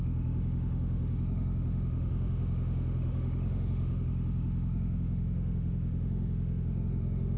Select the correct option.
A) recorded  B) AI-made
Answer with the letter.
B